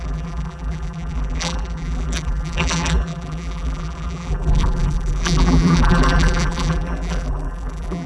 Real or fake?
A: fake